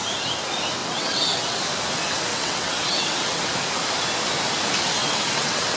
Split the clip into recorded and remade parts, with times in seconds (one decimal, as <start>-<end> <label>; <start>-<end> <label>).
0.0-0.8 recorded; 0.8-1.6 remade; 1.6-2.3 recorded; 2.3-3.5 remade; 3.5-5.0 recorded; 5.0-5.8 remade